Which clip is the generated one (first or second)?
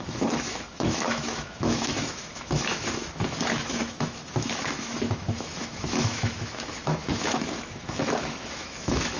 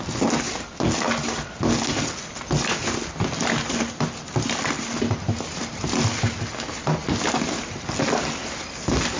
first